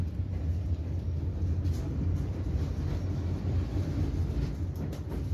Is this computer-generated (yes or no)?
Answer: no